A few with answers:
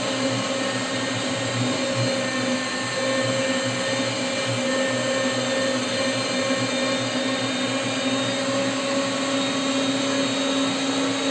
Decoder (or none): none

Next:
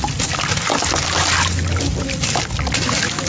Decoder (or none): none